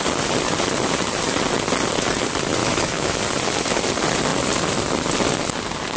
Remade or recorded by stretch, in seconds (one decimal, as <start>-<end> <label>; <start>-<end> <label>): 0.0-2.6 recorded; 2.6-3.2 remade; 3.2-6.0 recorded